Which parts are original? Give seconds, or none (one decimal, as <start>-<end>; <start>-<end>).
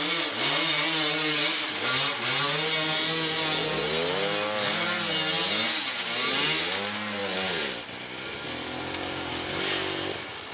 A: 0.0-10.5